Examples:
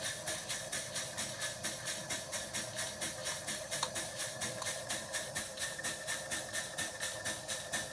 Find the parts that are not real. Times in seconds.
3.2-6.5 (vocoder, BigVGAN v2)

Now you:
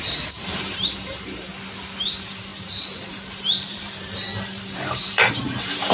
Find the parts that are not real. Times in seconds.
0.0-1.5 (vocoder, BigVGAN v2); 2.0-5.9

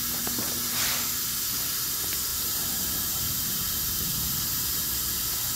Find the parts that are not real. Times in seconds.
2.3-4.8 (vocoder, BigVGAN v2)

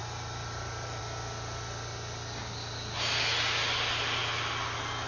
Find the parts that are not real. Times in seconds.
0.0-1.0 (vocoder, BigVGAN v2)

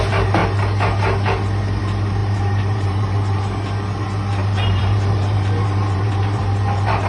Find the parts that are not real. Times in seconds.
2.2-3.4 (vocoder, BigVGAN v2); 4.4-7.1

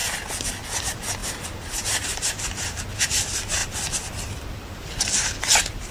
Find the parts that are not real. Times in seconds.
1.2-2.8 (vocoder, BigVGAN v2)

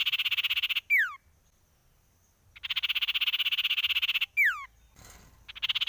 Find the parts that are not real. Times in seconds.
none

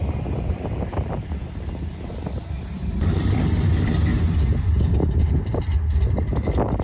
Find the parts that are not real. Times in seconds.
0.0-1.4 (vocoder, BigVGAN v2); 2.1-4.1; 5.2-6.8